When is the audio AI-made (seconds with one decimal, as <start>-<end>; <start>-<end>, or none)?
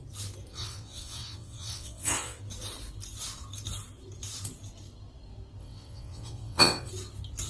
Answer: 0.5-2.4; 5.6-6.9